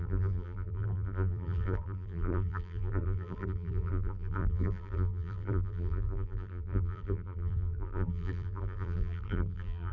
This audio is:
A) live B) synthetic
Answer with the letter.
B